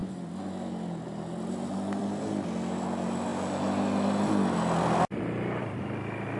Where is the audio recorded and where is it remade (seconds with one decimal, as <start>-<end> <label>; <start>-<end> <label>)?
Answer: 0.0-6.4 recorded